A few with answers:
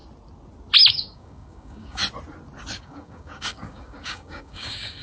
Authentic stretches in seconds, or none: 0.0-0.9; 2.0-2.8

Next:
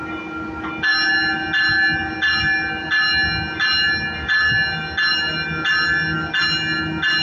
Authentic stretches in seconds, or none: 0.0-7.2

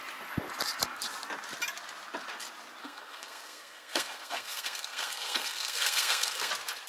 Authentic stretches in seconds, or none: 0.0-2.8; 6.5-6.9

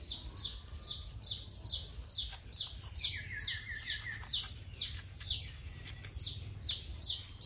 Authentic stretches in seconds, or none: 0.0-7.5

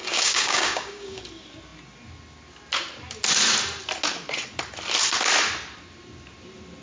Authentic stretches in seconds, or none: 1.2-6.8

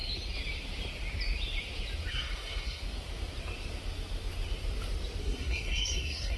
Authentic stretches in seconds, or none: 0.0-2.1; 2.8-5.2

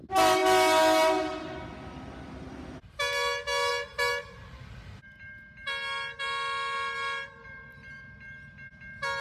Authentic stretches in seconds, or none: 0.0-9.2

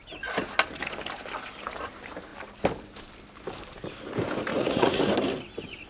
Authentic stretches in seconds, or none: 0.0-4.5; 5.0-5.9